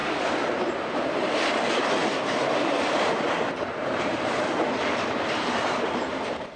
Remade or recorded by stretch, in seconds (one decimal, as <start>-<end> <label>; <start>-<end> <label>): 0.0-1.4 remade; 1.4-2.0 recorded; 2.0-4.4 remade; 4.4-6.6 recorded

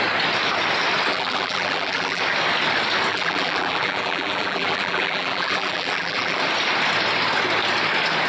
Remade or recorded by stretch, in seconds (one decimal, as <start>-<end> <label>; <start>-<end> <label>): 0.0-1.1 recorded; 1.1-2.2 remade; 2.2-3.1 recorded; 3.1-6.4 remade; 6.4-8.3 recorded

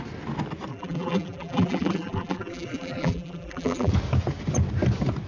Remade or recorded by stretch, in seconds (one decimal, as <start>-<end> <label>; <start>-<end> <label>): 0.0-0.7 recorded; 0.7-3.9 remade; 3.9-5.3 recorded

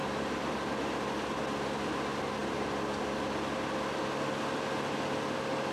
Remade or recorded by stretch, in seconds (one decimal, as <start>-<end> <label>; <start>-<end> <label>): 0.0-0.5 remade; 0.5-2.4 recorded; 2.4-3.0 remade; 3.0-5.7 recorded

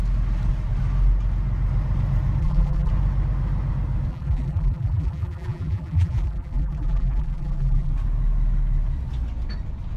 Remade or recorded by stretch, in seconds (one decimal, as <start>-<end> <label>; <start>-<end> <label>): 0.0-2.4 recorded; 2.4-2.9 remade; 2.9-4.1 recorded; 4.1-7.9 remade; 7.9-10.0 recorded

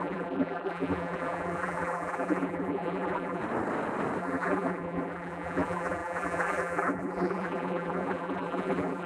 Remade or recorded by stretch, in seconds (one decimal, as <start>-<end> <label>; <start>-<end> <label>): 0.0-3.4 remade; 3.4-4.2 recorded; 4.2-9.1 remade